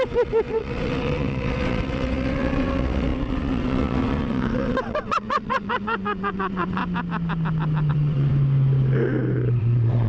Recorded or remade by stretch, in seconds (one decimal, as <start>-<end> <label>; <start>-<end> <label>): 0.0-6.8 remade; 6.8-7.9 recorded; 7.9-8.3 remade; 8.3-9.6 recorded; 9.6-10.1 remade